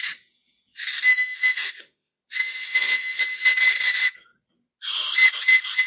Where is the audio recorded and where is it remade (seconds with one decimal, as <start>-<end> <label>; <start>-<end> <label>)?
0.0-0.9 recorded; 0.9-2.2 remade; 2.2-2.6 recorded; 2.6-3.2 remade; 3.2-5.9 recorded